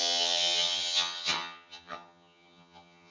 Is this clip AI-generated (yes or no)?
yes